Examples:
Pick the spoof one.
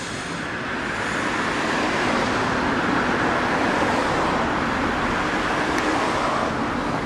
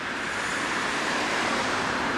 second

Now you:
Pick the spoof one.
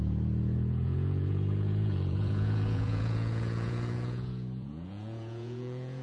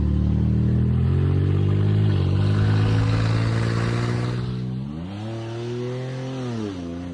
first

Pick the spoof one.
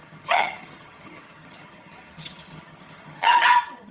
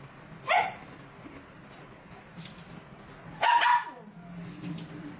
first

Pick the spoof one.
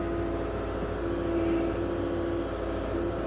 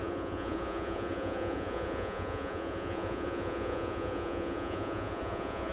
second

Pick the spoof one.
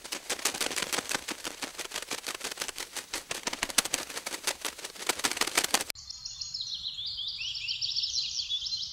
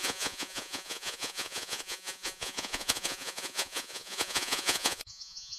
second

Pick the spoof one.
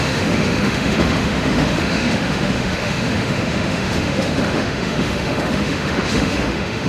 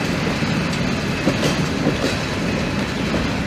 first